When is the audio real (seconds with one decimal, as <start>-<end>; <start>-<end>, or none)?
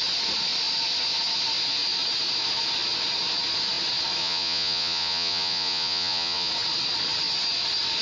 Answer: 0.0-4.2; 6.5-8.0